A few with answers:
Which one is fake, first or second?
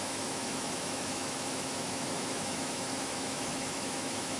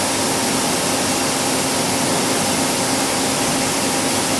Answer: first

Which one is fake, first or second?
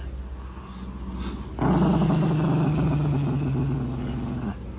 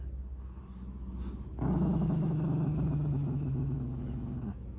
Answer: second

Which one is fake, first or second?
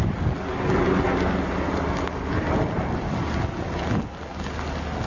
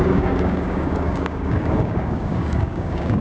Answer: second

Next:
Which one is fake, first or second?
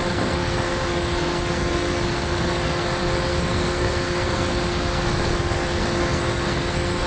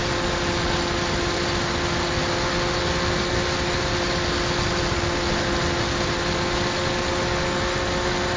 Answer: first